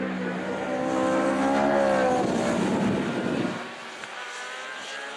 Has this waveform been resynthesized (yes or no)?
no